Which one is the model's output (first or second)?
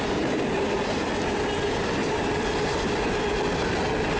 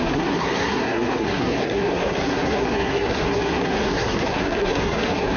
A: second